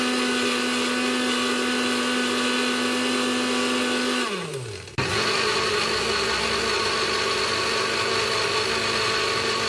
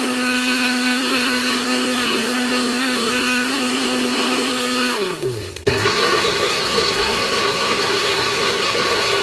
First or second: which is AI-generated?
second